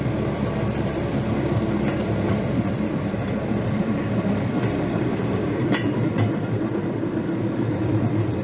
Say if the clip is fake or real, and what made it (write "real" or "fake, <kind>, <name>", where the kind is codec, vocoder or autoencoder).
fake, vocoder, BigVGAN v2